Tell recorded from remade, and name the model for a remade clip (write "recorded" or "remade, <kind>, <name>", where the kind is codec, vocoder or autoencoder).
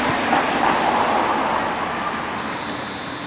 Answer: recorded